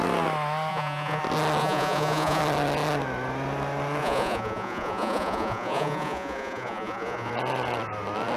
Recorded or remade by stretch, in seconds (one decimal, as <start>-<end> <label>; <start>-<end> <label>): 0.0-0.7 recorded; 0.7-1.2 remade; 1.2-1.6 recorded; 1.6-2.4 remade; 2.4-4.0 recorded; 4.0-7.3 remade; 7.3-8.4 recorded